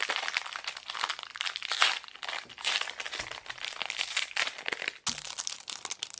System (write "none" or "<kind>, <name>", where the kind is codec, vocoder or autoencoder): none